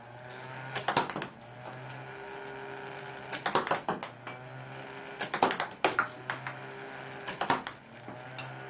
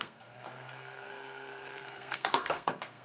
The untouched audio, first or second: first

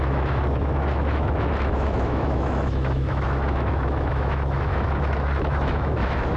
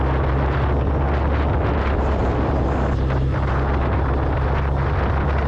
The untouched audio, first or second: second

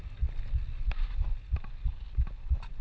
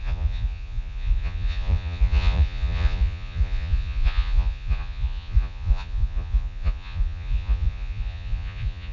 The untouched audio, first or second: first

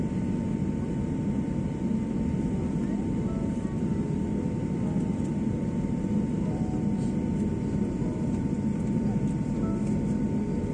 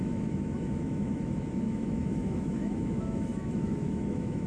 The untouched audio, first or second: first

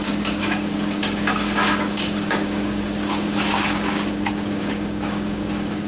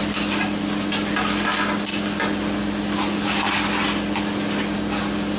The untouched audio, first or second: second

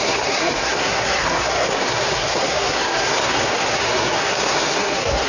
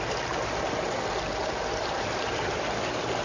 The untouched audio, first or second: second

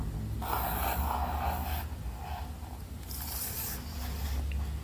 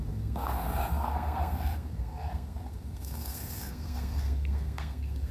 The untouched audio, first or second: first